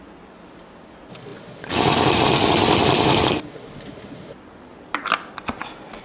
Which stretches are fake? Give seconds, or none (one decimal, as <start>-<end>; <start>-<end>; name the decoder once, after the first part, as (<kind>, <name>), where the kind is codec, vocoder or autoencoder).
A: none